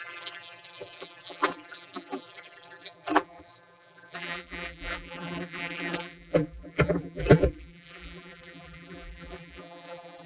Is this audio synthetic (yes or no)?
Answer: yes